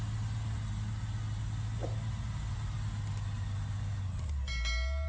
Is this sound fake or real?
real